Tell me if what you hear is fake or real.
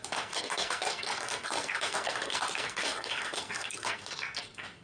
fake